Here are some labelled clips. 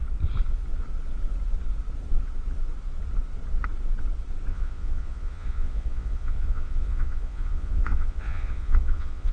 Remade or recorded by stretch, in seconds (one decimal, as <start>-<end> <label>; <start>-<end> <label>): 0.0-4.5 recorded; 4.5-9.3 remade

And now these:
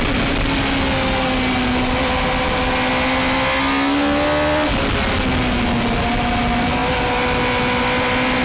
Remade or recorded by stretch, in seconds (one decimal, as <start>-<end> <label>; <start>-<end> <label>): 0.0-8.4 recorded

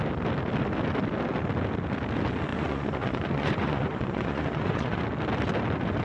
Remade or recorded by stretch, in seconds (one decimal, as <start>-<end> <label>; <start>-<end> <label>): 0.0-2.5 recorded; 2.5-5.0 remade; 5.0-6.0 recorded

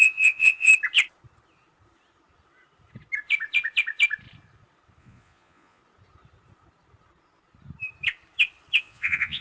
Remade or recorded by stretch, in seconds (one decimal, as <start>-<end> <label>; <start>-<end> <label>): 0.0-0.7 remade; 0.7-5.0 recorded; 5.0-5.8 remade; 5.8-8.8 recorded; 8.8-9.4 remade

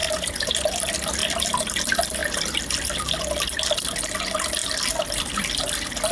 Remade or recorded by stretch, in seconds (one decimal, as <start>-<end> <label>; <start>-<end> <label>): 0.0-0.5 remade; 0.5-1.2 recorded; 1.2-1.8 remade; 1.8-2.2 recorded; 2.2-2.8 remade; 2.8-4.6 recorded; 4.6-5.4 remade; 5.4-6.1 recorded